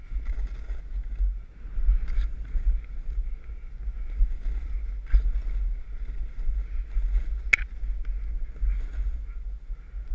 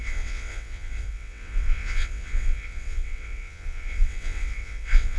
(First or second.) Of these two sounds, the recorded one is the first